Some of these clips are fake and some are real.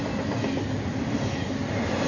real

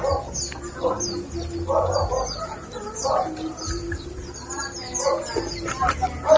real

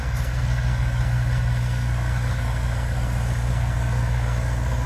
fake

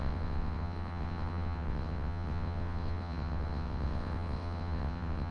fake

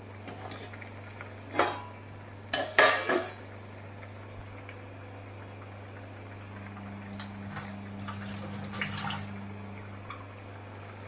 real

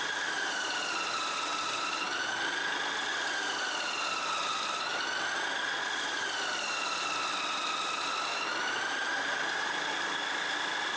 real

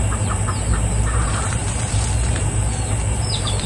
fake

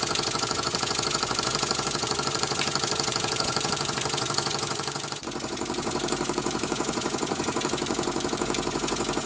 fake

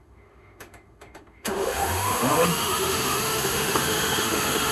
fake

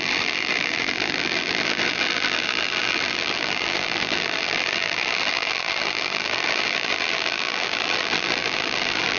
fake